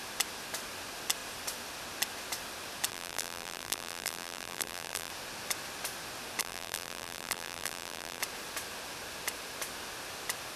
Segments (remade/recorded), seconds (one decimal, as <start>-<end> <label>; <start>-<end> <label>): 0.0-2.9 recorded; 2.9-5.1 remade; 5.1-6.4 recorded; 6.4-8.2 remade; 8.2-10.6 recorded